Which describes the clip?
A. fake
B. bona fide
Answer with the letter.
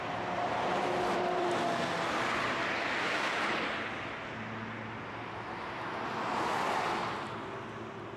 B